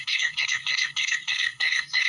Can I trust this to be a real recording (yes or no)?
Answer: no